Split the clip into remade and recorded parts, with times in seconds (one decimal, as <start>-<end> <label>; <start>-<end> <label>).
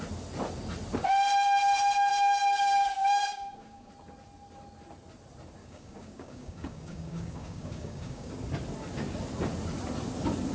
0.0-2.1 recorded; 2.1-3.9 remade; 3.9-5.6 recorded; 5.6-8.3 remade; 8.3-10.5 recorded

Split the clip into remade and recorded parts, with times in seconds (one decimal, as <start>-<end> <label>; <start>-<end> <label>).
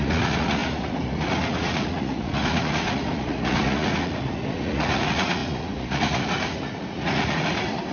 0.0-7.9 remade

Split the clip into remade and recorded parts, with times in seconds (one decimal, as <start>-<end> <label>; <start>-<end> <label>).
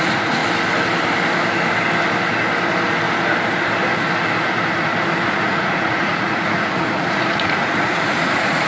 0.0-0.4 remade; 0.4-5.4 recorded; 5.4-8.7 remade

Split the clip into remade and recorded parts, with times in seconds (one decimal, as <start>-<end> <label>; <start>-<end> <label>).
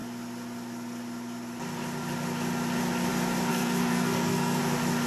0.0-3.5 recorded; 3.5-4.6 remade; 4.6-5.1 recorded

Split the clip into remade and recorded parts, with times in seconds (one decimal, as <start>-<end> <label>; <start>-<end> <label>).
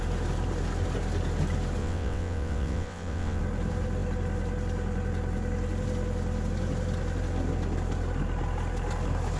0.0-1.8 recorded; 1.8-3.4 remade; 3.4-9.4 recorded